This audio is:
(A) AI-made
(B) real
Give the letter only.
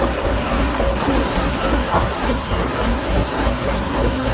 A